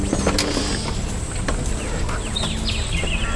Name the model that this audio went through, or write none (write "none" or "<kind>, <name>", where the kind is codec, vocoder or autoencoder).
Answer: none